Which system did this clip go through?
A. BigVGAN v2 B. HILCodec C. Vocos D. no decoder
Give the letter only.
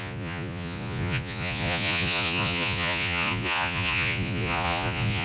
C